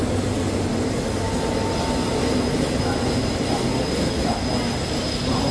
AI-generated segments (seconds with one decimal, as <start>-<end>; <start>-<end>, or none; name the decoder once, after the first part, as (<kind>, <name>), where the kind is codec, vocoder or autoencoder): none